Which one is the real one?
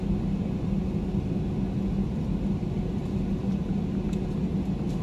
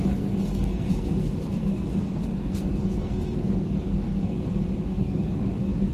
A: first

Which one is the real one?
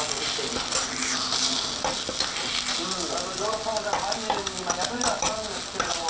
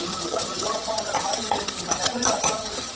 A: first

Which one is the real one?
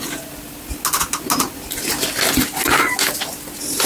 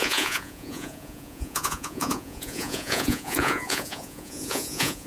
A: first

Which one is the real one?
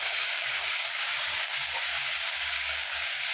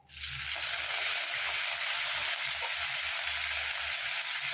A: second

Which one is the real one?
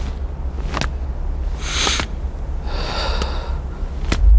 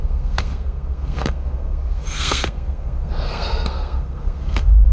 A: first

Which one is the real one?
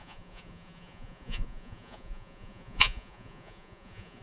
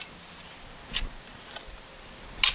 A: second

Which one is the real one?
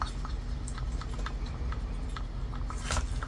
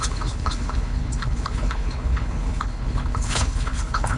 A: first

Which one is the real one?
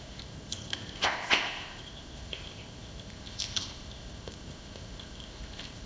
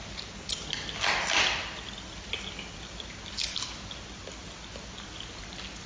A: second